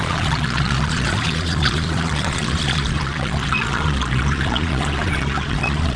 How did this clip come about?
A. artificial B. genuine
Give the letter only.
A